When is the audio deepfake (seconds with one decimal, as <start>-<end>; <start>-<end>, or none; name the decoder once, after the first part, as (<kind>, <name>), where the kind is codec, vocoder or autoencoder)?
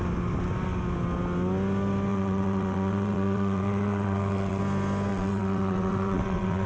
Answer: 2.1-4.6 (vocoder, WaveNeXt); 5.1-6.7